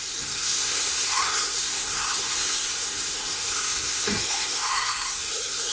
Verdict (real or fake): fake